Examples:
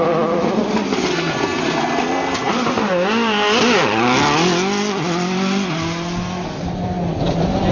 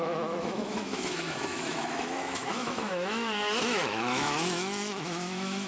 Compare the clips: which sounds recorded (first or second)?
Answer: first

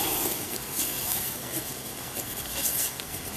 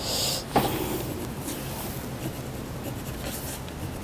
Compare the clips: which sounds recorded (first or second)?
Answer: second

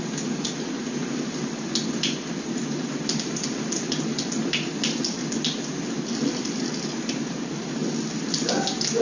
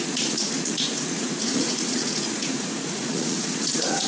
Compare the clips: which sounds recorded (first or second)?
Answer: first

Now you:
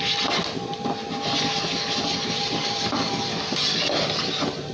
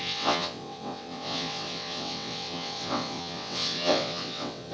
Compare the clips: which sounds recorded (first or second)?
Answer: first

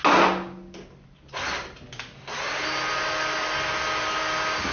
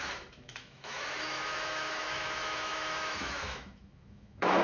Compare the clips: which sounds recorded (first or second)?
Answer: first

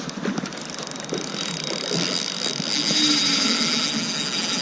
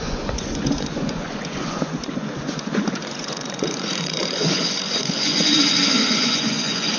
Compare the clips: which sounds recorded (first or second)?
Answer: first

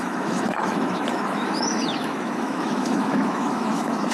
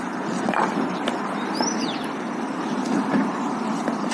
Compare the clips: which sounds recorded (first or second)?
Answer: second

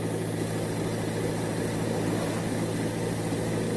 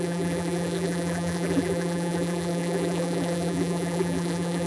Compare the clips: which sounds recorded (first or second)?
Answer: first